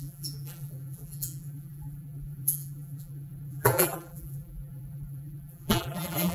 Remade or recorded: remade